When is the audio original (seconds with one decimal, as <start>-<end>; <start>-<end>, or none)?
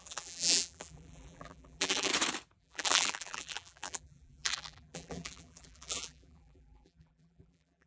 2.1-2.6